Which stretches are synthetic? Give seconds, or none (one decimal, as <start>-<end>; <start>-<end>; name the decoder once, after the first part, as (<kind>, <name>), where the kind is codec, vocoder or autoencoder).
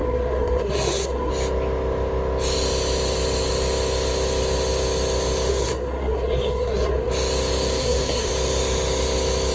0.0-1.3 (codec, SNAC); 5.5-7.1; 7.8-8.3